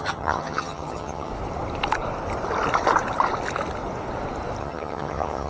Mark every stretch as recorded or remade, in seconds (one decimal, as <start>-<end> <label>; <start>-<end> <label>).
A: 0.0-1.3 remade; 1.3-4.6 recorded; 4.6-5.5 remade